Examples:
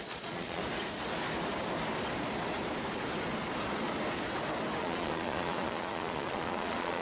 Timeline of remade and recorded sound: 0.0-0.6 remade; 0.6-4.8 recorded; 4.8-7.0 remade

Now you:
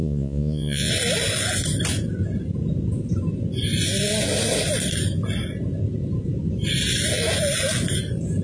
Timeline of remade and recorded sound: 0.0-0.9 remade; 0.9-8.4 recorded

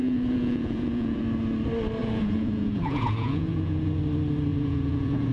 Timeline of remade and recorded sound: 0.0-1.2 remade; 1.2-2.0 recorded; 2.0-4.0 remade; 4.0-4.5 recorded; 4.5-5.3 remade

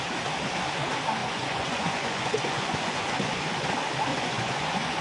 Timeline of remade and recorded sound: 0.0-1.2 recorded; 1.2-3.6 remade; 3.6-4.1 recorded; 4.1-5.0 remade

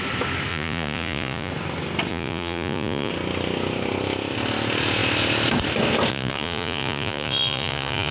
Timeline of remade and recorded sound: 0.0-0.5 recorded; 0.5-1.5 remade; 1.5-2.1 recorded; 2.1-3.1 remade; 3.1-6.1 recorded; 6.1-8.1 remade